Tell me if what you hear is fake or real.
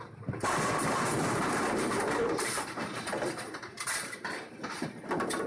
fake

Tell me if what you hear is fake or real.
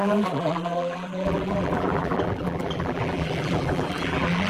fake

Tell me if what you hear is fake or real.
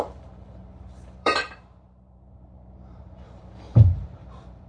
fake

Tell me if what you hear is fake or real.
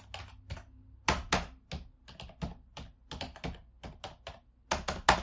real